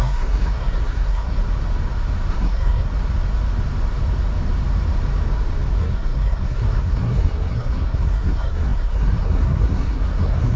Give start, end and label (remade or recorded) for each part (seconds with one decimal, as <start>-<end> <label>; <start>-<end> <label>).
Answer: 0.0-1.4 remade; 1.4-2.3 recorded; 2.3-2.9 remade; 2.9-5.8 recorded; 5.8-10.6 remade